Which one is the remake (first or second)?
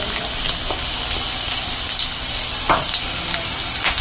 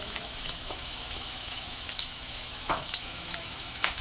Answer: second